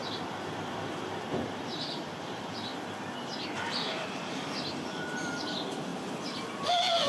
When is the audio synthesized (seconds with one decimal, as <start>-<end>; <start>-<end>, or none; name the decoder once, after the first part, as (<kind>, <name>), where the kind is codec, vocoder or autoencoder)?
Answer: 0.0-2.7 (vocoder, BigVGAN v2); 3.7-5.9